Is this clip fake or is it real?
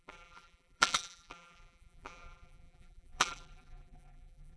fake